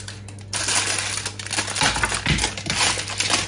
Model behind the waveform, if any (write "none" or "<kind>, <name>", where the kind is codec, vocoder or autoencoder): none